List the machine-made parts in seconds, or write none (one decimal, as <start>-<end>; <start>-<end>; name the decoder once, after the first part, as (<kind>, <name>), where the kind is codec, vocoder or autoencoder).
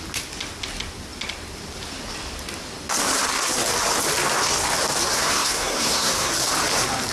5.1-6.3 (codec, SNAC)